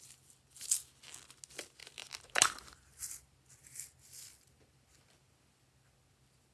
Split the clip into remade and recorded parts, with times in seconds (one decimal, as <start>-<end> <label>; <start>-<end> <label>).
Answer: 0.0-6.5 recorded

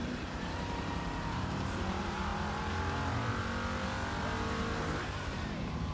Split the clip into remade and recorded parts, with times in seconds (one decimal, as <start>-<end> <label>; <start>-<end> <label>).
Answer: 0.0-2.3 remade; 2.3-5.3 recorded; 5.3-5.9 remade

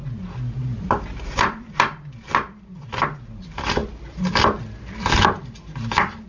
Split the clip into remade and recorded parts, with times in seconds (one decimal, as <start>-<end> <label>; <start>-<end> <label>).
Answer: 0.0-1.7 remade; 1.7-6.3 recorded

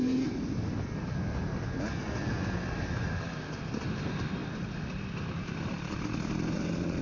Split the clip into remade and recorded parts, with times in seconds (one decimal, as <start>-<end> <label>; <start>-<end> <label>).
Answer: 0.0-4.4 recorded; 4.4-5.9 remade; 5.9-7.0 recorded